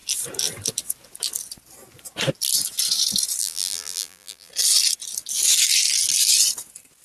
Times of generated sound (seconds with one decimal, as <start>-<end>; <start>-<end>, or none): 3.4-4.5